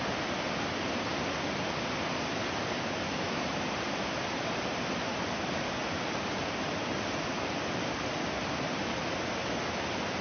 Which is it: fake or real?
real